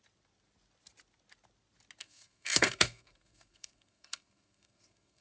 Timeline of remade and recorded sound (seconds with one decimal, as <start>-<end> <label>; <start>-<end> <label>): 0.0-2.0 recorded; 2.0-5.2 remade